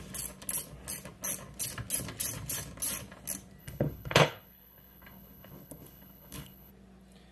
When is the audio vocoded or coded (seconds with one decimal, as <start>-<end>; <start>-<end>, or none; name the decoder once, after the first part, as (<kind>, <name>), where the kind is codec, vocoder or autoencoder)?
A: 3.6-6.7 (codec, HILCodec)